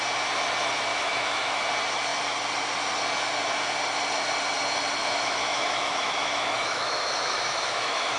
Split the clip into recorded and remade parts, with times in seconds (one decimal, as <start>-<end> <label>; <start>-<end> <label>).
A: 0.0-0.9 recorded; 0.9-1.6 remade; 1.6-5.0 recorded; 5.0-8.2 remade